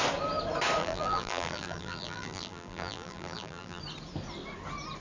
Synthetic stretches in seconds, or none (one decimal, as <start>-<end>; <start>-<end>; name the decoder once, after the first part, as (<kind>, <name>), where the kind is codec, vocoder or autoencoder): 0.8-3.8 (vocoder, BigVGAN v2)